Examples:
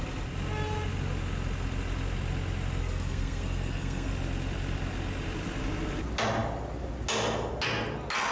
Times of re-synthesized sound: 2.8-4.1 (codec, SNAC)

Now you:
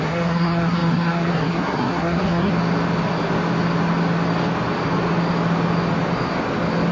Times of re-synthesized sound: 0.0-2.5 (codec, SNAC)

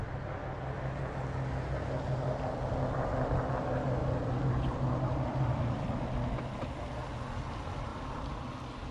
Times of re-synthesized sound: 4.0-6.0 (vocoder, BigVGAN v2); 7.9-8.4

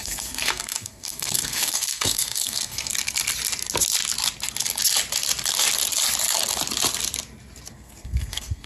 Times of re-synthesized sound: 0.0-2.9 (codec, SNAC); 7.7-8.7

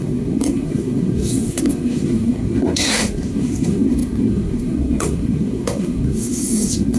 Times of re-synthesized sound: 0.0-7.0 (codec, SNAC)